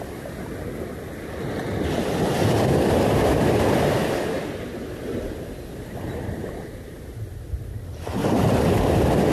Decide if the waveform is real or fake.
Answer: real